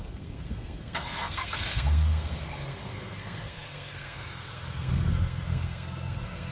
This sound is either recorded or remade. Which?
remade